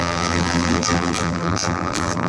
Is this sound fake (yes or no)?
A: yes